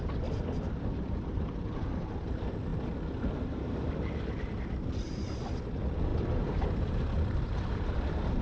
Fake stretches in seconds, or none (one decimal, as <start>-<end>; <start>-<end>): 0.0-8.4